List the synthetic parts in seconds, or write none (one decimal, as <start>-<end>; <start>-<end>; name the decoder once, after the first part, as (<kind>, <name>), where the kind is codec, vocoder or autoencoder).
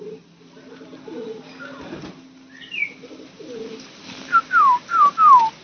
none